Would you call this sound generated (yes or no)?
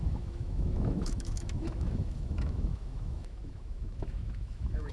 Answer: yes